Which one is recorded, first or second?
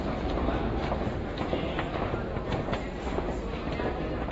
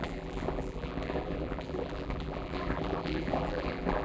first